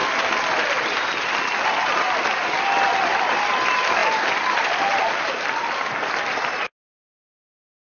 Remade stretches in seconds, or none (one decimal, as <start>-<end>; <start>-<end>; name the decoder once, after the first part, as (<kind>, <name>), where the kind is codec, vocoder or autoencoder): none